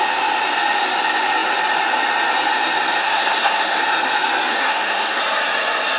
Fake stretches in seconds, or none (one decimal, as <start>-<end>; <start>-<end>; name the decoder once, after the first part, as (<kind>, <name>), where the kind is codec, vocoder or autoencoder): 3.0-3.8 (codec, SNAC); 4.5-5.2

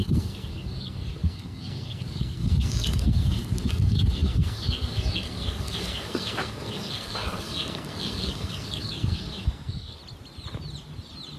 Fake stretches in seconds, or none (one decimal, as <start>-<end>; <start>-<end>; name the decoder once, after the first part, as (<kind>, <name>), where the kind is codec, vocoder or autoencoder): 0.0-10.0 (codec, SNAC)

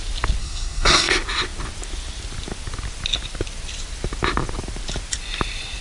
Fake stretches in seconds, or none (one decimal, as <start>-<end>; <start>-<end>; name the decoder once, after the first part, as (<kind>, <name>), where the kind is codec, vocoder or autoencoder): 0.4-1.1 (codec, SNAC)

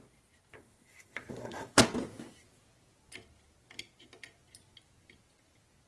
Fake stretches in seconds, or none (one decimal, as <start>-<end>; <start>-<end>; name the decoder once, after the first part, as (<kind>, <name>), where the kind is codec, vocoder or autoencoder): 0.5-1.8 (codec, SNAC)